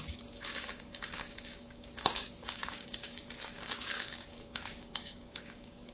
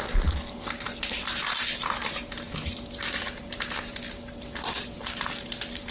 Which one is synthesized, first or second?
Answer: first